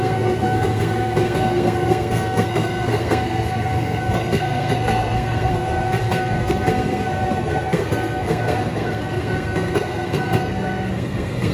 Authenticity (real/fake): fake